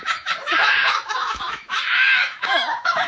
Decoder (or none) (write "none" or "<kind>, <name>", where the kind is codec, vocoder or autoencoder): autoencoder, DAC-VAE